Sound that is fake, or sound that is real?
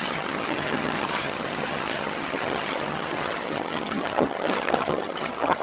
fake